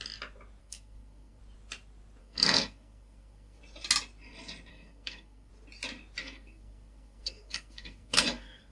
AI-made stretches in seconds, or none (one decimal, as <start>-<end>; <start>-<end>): 0.6-1.4; 2.2-3.6; 4.7-5.5; 6.2-8.7